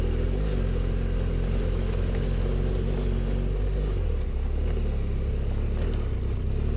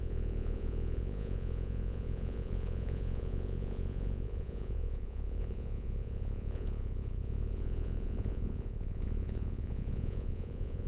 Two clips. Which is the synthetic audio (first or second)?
second